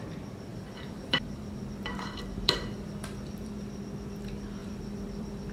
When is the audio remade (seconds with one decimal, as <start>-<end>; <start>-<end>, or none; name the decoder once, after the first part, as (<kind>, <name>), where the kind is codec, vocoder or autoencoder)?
0.5-3.8 (vocoder, BigVGAN v2); 4.6-5.5